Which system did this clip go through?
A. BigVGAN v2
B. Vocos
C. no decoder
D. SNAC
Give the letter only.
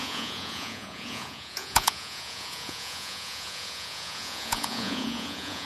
B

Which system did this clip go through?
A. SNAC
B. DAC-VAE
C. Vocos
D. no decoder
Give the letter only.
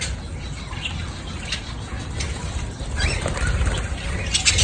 D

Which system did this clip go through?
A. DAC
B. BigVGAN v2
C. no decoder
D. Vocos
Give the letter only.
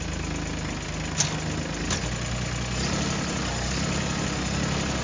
C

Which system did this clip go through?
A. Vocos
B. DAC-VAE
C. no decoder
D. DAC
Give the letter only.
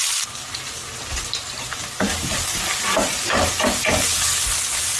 C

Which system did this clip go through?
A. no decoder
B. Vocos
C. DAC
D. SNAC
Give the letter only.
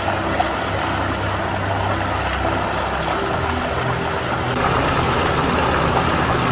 A